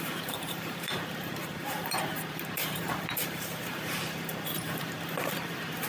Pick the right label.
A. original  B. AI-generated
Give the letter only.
B